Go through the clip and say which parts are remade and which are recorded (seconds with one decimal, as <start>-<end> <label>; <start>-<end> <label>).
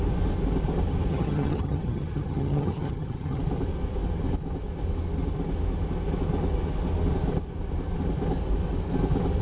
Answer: 0.0-1.1 recorded; 1.1-3.4 remade; 3.4-9.4 recorded